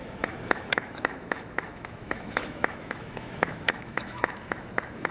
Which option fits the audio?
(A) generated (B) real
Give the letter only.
A